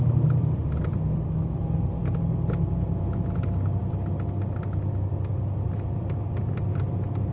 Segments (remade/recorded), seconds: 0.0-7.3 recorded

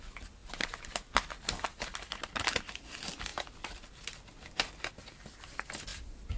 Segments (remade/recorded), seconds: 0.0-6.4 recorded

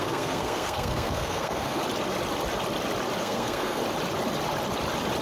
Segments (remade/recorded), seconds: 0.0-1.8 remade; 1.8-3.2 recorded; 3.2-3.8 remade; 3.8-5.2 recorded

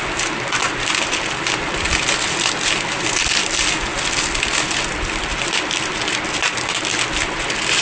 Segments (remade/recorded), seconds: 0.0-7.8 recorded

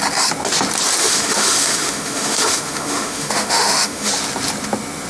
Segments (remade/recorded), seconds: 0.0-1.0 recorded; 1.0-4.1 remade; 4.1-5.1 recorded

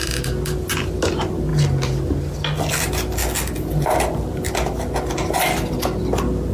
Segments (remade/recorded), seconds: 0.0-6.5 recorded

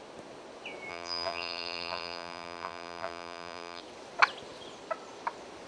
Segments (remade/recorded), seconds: 0.0-0.9 recorded; 0.9-3.8 remade; 3.8-5.7 recorded